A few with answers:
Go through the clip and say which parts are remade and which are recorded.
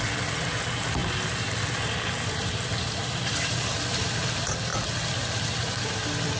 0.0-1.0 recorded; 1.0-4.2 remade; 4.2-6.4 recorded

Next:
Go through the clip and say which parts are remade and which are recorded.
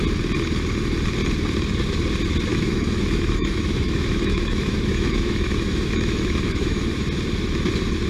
0.0-2.5 recorded; 2.5-7.0 remade; 7.0-8.1 recorded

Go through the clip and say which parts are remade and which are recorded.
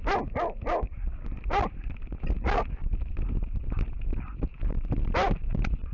0.0-3.1 remade; 3.1-5.9 recorded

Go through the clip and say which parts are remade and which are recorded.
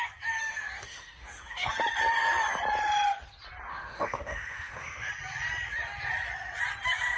0.0-0.4 recorded; 0.4-1.7 remade; 1.7-3.7 recorded; 3.7-5.1 remade; 5.1-7.2 recorded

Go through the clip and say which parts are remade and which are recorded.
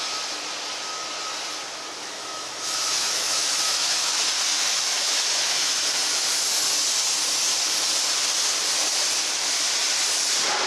0.0-2.0 recorded; 2.0-4.2 remade; 4.2-4.7 recorded; 4.7-5.7 remade; 5.7-10.7 recorded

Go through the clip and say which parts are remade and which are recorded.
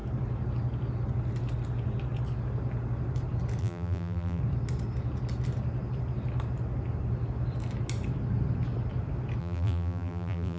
0.0-3.6 recorded; 3.6-4.4 remade; 4.4-9.4 recorded; 9.4-10.6 remade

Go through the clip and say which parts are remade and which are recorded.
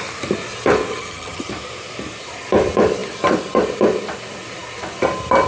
0.0-0.9 recorded; 0.9-1.5 remade; 1.5-5.5 recorded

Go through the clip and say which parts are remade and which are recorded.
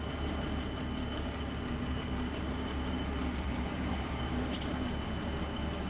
0.0-1.0 recorded; 1.0-4.5 remade; 4.5-5.9 recorded